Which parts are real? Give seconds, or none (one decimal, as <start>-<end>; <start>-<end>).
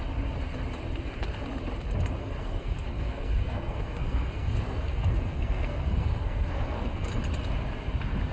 0.0-2.2; 7.2-8.3